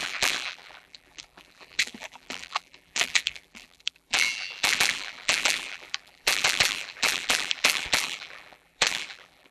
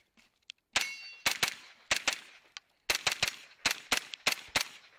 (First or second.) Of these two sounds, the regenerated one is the first